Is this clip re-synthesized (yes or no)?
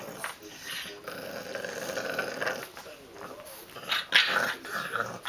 no